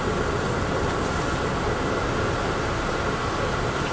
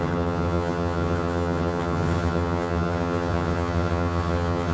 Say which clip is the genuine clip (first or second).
first